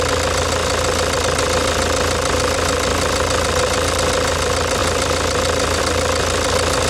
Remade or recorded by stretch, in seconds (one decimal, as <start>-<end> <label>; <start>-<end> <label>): 0.0-6.9 recorded